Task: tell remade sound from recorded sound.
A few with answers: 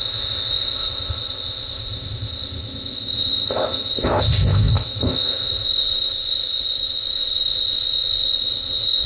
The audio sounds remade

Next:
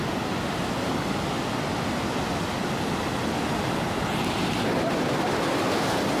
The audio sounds recorded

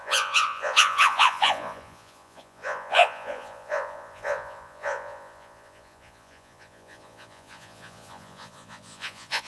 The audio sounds remade